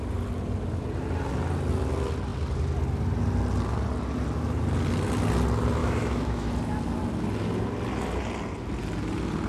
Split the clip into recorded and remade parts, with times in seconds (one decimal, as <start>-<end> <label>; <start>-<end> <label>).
0.0-5.8 recorded; 5.8-6.5 remade; 6.5-9.5 recorded